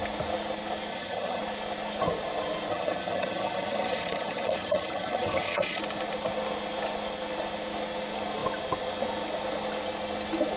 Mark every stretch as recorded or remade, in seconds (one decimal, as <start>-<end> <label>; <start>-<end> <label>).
0.0-0.9 recorded; 0.9-1.4 remade; 1.4-2.7 recorded; 2.7-5.8 remade; 5.8-10.6 recorded

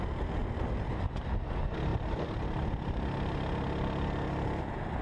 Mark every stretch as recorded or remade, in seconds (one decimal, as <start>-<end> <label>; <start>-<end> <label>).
0.0-5.0 recorded

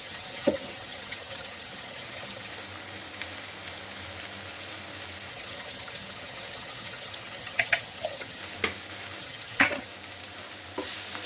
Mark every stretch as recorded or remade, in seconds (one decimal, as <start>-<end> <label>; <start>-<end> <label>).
0.0-2.5 remade; 2.5-5.3 recorded; 5.3-8.4 remade; 8.4-9.2 recorded; 9.2-9.9 remade; 9.9-11.3 recorded

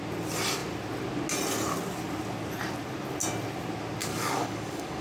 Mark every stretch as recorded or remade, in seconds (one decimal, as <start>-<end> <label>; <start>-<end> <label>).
0.0-4.0 recorded; 4.0-5.0 remade

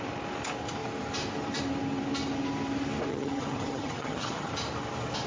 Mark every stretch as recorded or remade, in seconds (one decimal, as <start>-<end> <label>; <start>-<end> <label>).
0.0-3.1 recorded; 3.1-4.5 remade; 4.5-5.3 recorded

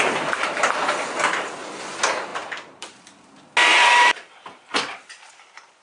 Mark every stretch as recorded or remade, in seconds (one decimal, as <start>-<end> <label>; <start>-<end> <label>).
0.0-2.3 recorded; 2.3-3.3 remade; 3.3-3.7 recorded; 3.7-4.4 remade; 4.4-5.8 recorded

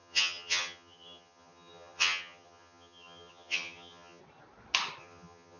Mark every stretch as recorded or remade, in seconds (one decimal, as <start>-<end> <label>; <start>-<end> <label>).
0.0-4.2 remade; 4.2-5.0 recorded; 5.0-5.6 remade

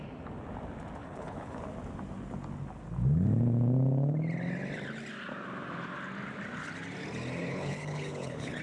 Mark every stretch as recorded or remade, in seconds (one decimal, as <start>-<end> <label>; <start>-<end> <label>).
0.0-1.0 recorded; 1.0-1.6 remade; 1.6-7.4 recorded; 7.4-8.6 remade